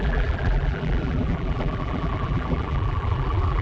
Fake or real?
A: fake